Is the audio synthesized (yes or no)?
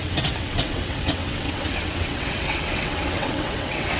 yes